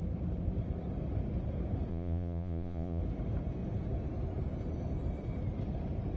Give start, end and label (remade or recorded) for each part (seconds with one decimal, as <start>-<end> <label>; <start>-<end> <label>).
0.0-1.9 recorded; 1.9-3.0 remade; 3.0-6.2 recorded